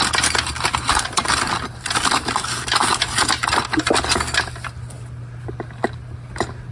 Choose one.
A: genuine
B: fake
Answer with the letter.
A